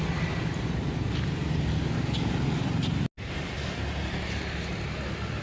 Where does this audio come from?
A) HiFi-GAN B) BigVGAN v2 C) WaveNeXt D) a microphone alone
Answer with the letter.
D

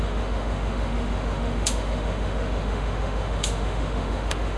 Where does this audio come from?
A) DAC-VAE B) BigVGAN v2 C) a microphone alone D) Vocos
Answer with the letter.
A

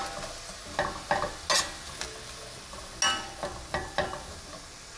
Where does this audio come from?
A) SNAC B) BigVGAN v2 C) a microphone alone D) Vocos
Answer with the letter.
C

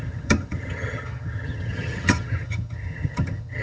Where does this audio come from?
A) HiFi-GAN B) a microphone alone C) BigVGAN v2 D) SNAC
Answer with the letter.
A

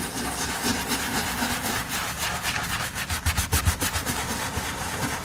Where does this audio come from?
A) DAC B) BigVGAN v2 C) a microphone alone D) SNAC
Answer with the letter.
C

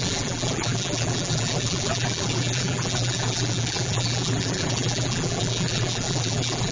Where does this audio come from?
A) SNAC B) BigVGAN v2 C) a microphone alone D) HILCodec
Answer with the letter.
B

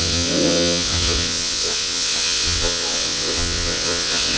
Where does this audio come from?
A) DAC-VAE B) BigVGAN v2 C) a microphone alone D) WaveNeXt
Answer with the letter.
D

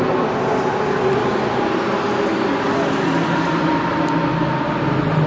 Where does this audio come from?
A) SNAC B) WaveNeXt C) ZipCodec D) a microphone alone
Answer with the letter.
D